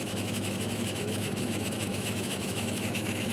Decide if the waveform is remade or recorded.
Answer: remade